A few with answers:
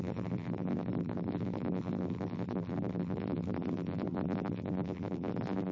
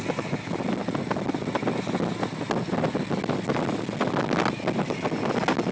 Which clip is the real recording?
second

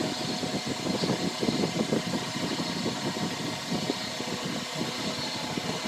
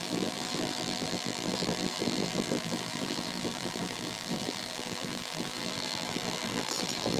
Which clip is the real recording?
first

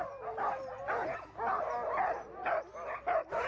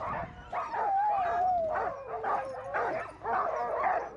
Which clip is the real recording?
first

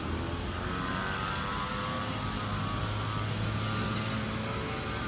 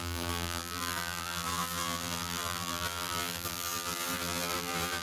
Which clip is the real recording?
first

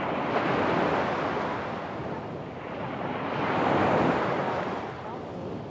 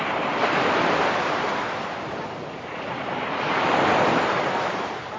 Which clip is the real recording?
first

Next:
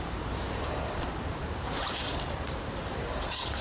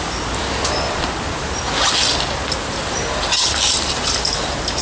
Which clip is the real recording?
second